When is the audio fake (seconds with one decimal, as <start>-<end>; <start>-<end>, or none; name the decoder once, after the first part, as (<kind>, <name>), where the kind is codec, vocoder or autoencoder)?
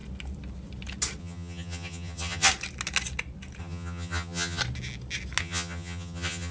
1.2-2.5 (vocoder, HiFi-GAN); 3.6-4.6; 5.4-6.5